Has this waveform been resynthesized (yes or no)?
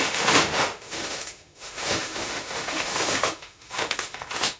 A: yes